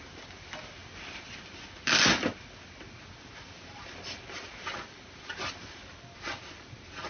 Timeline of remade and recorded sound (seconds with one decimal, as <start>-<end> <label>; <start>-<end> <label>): 0.0-7.1 recorded